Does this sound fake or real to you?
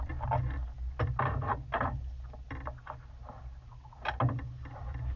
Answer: real